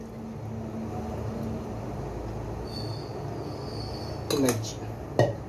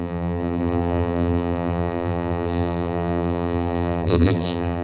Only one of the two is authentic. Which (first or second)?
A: first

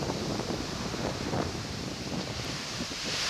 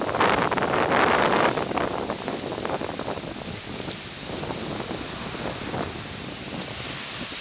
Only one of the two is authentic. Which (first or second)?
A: second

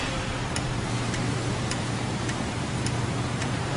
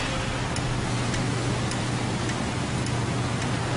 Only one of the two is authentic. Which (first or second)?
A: second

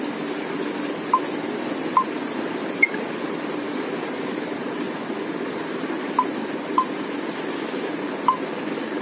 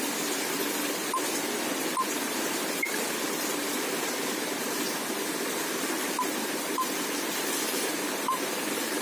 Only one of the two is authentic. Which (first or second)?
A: first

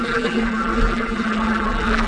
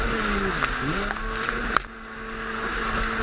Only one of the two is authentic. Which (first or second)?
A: second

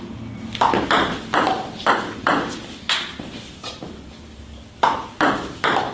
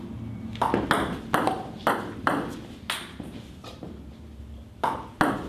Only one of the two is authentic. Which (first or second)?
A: second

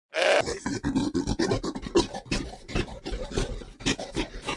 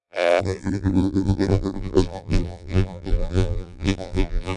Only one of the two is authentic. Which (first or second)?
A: first